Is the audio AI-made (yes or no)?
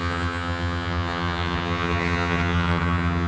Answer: yes